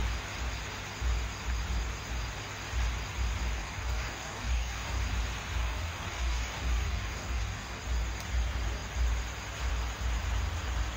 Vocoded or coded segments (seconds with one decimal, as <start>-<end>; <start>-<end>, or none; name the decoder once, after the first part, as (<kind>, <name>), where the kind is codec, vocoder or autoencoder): 3.6-5.0 (codec, DAC); 5.6-7.8